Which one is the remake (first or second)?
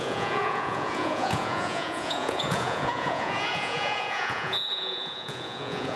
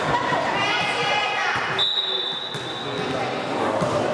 first